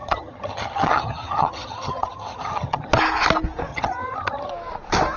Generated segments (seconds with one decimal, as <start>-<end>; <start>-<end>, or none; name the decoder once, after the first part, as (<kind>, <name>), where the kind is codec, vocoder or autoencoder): 0.0-2.9 (vocoder, HiFi-GAN); 3.7-4.5